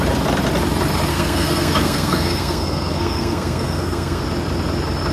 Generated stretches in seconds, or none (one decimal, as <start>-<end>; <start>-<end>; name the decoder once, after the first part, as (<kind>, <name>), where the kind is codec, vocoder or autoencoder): 1.1-4.2 (codec, SNAC)